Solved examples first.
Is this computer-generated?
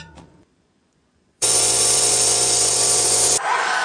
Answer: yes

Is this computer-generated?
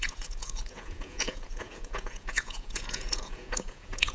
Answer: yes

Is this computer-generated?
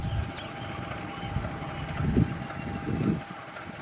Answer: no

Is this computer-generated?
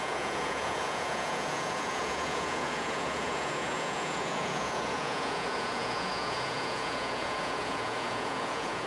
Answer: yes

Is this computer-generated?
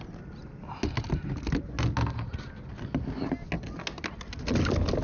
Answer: no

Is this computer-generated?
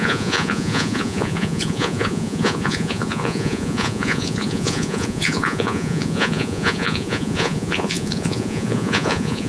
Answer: yes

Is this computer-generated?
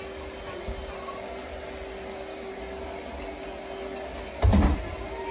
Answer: no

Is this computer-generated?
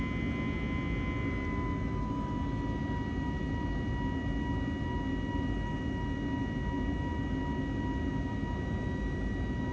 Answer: no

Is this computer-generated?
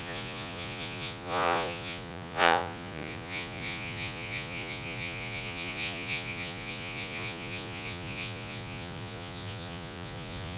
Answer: yes